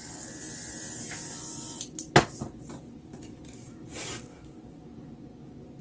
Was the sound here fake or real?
real